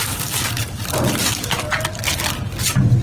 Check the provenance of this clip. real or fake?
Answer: real